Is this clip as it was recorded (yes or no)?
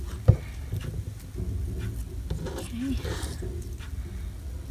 yes